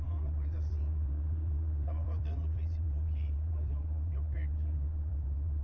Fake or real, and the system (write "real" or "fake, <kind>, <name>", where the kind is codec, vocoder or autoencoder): fake, vocoder, WaveNeXt